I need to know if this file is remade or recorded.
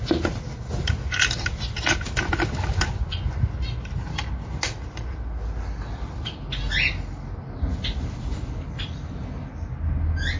recorded